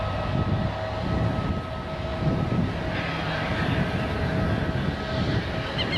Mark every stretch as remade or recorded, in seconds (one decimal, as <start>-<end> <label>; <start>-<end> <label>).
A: 0.0-2.1 recorded; 2.1-3.0 remade; 3.0-3.5 recorded; 3.5-4.6 remade; 4.6-6.0 recorded